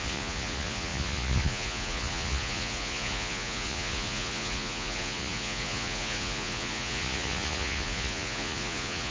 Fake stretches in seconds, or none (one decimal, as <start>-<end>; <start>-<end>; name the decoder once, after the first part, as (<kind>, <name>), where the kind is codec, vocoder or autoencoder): 0.0-9.1 (vocoder, Vocos)

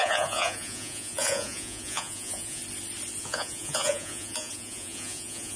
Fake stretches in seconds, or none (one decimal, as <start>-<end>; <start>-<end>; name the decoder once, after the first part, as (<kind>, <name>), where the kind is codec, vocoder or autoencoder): 0.0-2.6 (vocoder, Vocos); 3.2-5.6

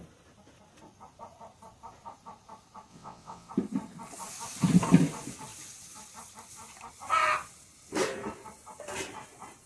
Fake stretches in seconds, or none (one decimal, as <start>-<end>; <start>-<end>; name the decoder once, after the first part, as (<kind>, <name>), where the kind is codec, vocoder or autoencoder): 2.9-3.5 (vocoder, WaveNeXt)

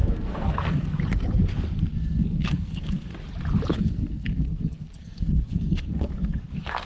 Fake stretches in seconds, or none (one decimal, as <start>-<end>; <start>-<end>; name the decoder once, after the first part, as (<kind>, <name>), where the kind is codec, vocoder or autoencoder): 0.0-1.0 (codec, SNAC); 1.9-3.1; 3.7-6.9

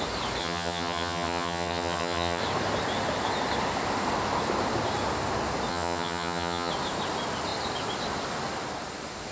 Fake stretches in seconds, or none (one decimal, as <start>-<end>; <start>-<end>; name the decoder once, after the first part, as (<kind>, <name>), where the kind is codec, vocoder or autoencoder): 0.4-2.4 (vocoder, HiFi-GAN); 5.7-6.7

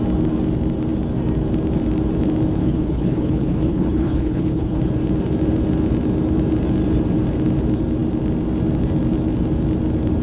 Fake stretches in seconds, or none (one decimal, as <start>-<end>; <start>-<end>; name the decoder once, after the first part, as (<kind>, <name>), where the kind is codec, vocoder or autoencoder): 2.6-4.8 (codec, HILCodec)

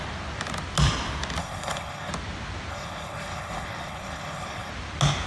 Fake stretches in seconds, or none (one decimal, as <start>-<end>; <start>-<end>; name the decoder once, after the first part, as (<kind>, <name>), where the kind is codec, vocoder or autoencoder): 1.4-2.1 (codec, HILCodec); 2.7-4.7